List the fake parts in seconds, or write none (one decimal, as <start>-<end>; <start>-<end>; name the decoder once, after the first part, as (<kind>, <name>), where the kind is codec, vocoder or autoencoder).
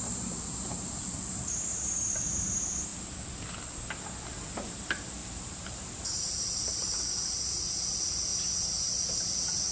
0.0-2.9 (vocoder, BigVGAN v2); 4.3-8.3; 8.8-9.7